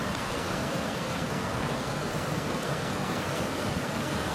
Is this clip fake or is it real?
fake